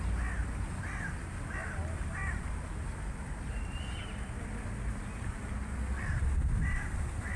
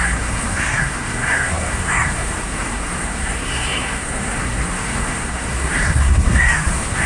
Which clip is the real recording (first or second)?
first